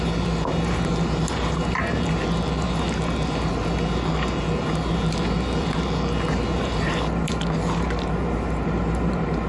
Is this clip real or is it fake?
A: fake